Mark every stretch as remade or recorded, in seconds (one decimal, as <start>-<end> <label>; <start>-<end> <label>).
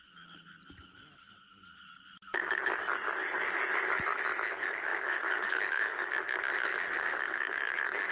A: 0.0-4.9 recorded; 4.9-6.4 remade; 6.4-8.1 recorded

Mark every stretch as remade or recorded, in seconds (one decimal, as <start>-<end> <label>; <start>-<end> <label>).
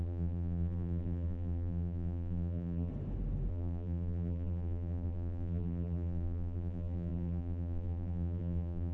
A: 0.0-2.9 remade; 2.9-3.5 recorded; 3.5-8.9 remade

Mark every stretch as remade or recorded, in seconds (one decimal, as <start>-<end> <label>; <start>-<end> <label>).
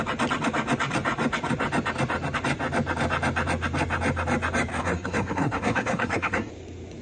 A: 0.0-4.7 recorded; 4.7-6.5 remade; 6.5-7.0 recorded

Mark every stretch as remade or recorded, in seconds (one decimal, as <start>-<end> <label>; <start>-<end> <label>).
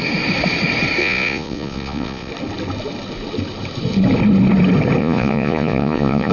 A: 0.0-1.0 recorded; 1.0-2.3 remade; 2.3-5.0 recorded; 5.0-6.3 remade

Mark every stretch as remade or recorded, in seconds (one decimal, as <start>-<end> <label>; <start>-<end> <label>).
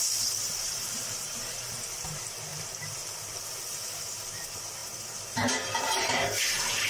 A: 0.0-6.9 remade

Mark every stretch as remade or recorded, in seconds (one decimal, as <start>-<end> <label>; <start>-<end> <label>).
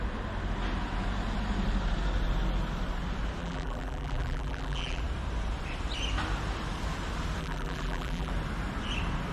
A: 0.0-3.4 recorded; 3.4-5.0 remade; 5.0-7.4 recorded; 7.4-8.3 remade; 8.3-9.3 recorded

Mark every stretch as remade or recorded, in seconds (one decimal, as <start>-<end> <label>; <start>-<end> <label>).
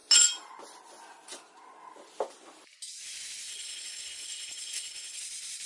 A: 0.0-3.5 recorded; 3.5-5.2 remade; 5.2-5.7 recorded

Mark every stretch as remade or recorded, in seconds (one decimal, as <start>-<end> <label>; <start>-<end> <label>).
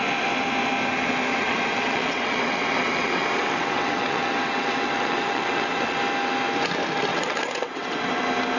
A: 0.0-1.3 recorded; 1.3-6.0 remade; 6.0-7.1 recorded; 7.1-8.2 remade; 8.2-8.6 recorded